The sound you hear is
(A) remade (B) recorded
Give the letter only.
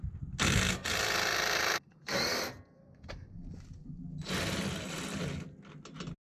B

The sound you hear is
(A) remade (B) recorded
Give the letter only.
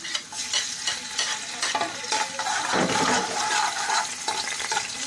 B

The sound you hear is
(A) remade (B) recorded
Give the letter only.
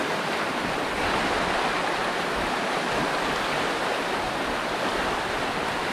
B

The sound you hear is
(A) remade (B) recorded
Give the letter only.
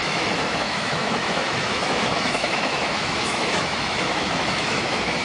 A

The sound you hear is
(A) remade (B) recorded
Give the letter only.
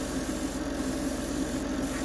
B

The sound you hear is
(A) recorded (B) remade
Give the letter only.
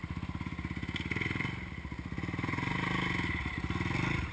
A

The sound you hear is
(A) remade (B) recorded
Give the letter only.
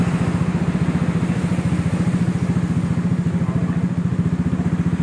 B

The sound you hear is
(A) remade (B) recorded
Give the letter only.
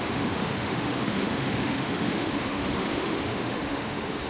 A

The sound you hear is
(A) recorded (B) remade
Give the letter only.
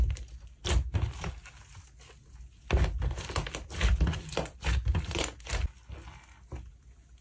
A